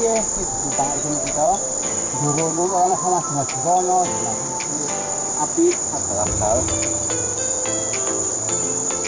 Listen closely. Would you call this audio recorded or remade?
remade